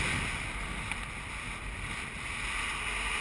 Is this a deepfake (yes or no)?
no